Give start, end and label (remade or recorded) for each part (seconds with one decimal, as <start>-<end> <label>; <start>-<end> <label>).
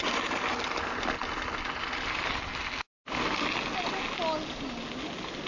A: 0.0-5.5 recorded